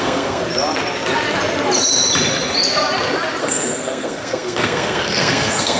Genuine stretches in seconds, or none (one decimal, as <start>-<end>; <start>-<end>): 0.4-3.4